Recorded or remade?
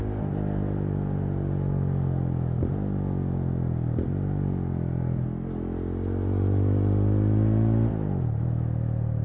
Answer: recorded